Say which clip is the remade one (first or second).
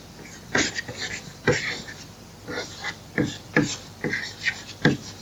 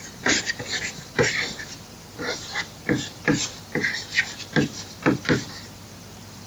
second